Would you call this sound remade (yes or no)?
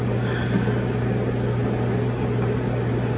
no